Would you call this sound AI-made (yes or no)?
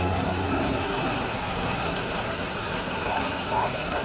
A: yes